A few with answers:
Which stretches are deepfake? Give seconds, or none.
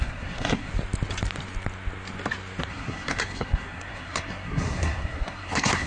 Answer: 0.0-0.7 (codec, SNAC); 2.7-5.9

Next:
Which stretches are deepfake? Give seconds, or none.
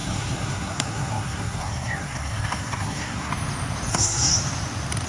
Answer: 0.0-3.3 (codec, SNAC); 3.9-4.3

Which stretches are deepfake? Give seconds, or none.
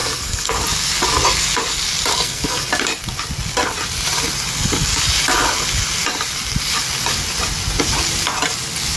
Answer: 0.0-0.5 (codec, SNAC); 2.1-2.7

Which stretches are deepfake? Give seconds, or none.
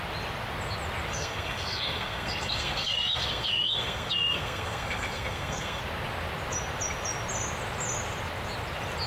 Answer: 1.1-5.8 (codec, SNAC)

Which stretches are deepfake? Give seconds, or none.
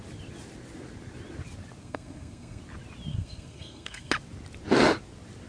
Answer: 1.8-2.6 (codec, SNAC); 3.1-4.1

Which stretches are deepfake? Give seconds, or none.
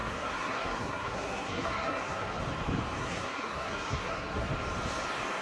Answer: 0.0-2.4 (codec, SNAC); 3.0-4.5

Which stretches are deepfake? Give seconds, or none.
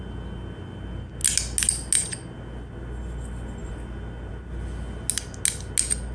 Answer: none